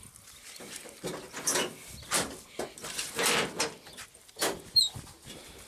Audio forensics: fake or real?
real